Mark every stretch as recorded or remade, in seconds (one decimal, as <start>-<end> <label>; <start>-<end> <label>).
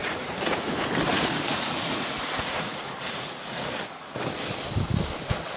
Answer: 0.0-0.7 remade; 0.7-1.1 recorded; 1.1-3.6 remade; 3.6-5.6 recorded